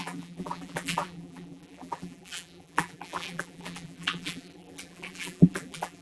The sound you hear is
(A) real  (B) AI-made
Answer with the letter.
B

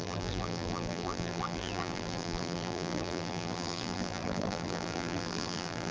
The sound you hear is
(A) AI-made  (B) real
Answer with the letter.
A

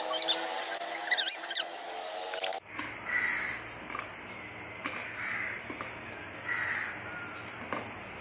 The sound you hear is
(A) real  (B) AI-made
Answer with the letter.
A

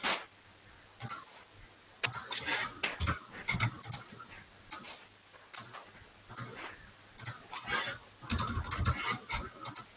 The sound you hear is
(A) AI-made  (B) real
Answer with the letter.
B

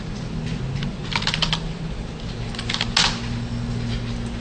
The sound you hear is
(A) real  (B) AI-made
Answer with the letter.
A